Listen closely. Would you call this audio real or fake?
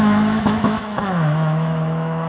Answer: fake